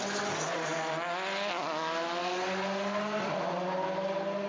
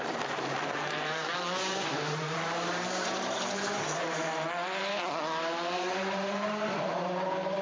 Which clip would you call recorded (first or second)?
first